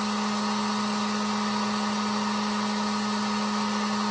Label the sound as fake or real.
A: real